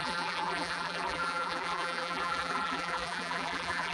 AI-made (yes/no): yes